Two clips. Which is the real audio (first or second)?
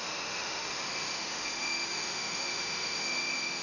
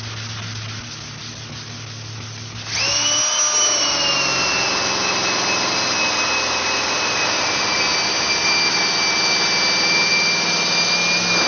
second